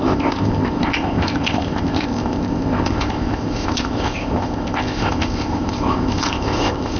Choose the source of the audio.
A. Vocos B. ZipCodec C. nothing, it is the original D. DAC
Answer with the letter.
B